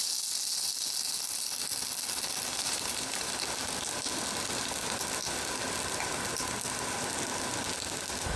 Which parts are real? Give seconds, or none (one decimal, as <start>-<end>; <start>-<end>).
0.0-2.5; 3.3-8.4